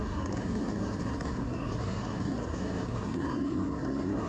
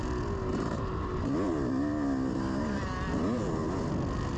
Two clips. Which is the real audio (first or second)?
second